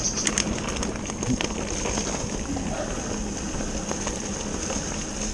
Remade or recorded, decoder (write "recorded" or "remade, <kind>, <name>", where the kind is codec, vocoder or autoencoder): recorded